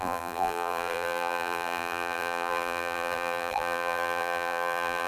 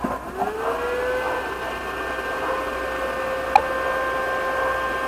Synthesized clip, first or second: first